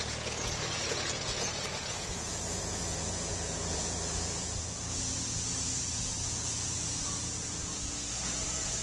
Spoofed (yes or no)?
yes